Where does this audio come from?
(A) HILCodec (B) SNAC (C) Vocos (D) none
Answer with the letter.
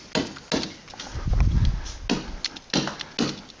D